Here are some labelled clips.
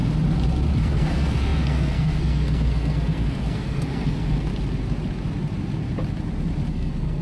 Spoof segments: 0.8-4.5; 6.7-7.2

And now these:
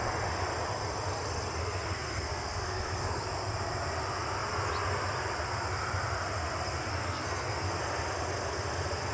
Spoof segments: 1.6-3.2; 6.9-7.8

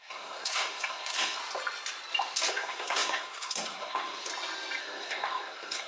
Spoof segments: 0.0-1.4; 2.5-4.3; 4.8-5.9